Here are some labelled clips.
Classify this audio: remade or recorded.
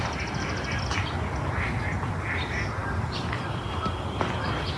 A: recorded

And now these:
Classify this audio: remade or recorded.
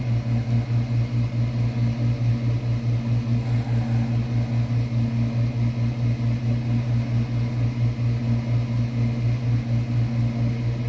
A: recorded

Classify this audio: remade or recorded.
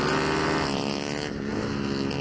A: recorded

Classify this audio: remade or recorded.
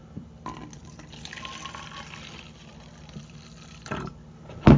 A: recorded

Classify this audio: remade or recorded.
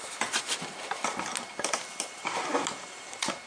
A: recorded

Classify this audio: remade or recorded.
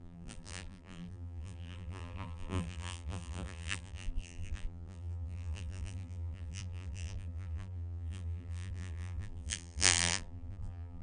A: remade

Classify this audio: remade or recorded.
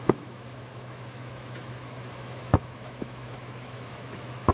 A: remade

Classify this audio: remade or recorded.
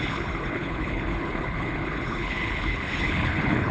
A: remade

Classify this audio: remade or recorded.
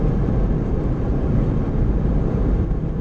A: recorded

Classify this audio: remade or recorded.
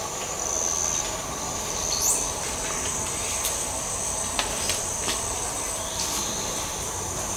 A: recorded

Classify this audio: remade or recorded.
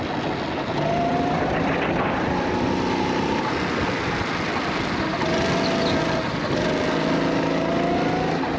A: recorded